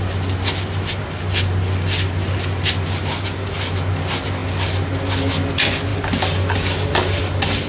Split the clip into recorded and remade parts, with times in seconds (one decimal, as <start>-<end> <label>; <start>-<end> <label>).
0.0-7.7 recorded